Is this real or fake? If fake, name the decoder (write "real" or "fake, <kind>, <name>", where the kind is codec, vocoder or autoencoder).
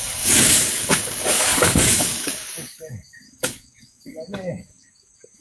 fake, codec, DAC